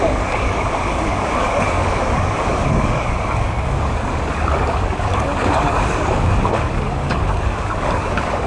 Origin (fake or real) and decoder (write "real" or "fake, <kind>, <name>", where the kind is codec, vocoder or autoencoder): fake, codec, DAC